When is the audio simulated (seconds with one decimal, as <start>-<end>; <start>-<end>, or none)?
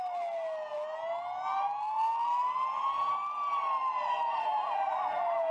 none